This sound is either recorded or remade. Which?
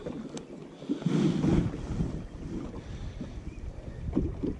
recorded